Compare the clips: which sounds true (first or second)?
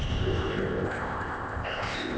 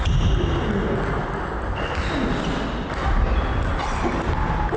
second